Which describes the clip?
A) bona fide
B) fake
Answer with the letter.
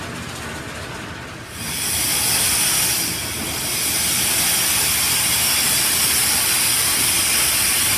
A